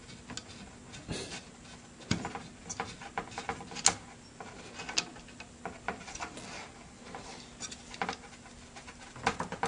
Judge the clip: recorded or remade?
recorded